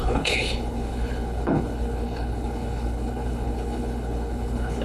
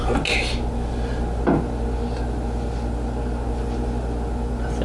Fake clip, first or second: first